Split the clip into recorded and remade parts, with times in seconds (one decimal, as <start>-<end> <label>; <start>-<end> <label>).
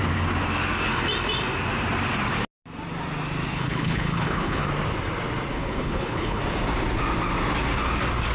0.0-3.5 recorded; 3.5-4.6 remade; 4.6-5.5 recorded; 5.5-6.4 remade; 6.4-8.3 recorded